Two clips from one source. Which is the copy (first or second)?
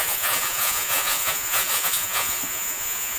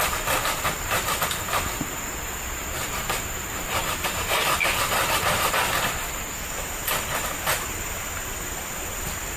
first